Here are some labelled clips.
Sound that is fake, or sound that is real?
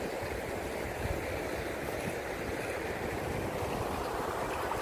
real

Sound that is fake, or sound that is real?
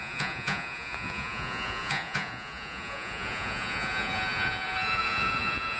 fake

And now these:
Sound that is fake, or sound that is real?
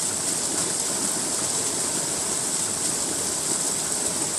real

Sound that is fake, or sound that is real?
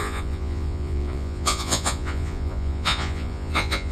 fake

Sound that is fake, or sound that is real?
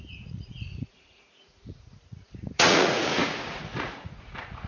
fake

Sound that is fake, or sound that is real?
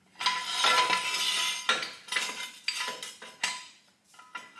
real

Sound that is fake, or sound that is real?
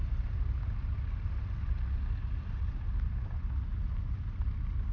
real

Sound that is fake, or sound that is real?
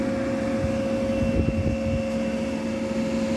real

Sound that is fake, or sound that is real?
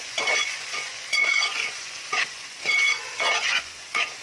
fake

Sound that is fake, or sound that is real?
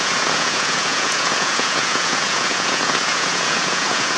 fake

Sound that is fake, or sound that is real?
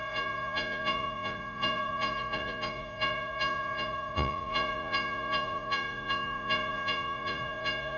fake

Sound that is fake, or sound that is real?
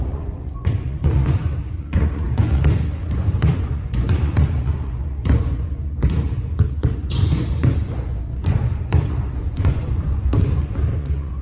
fake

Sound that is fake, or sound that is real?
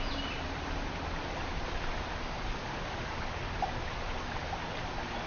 real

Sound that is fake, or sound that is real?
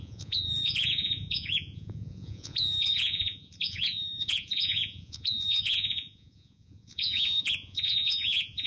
fake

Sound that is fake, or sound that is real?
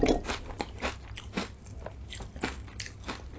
real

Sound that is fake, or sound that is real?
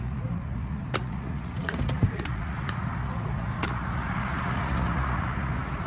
fake